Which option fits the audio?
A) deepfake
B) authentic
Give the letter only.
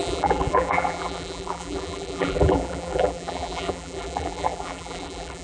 A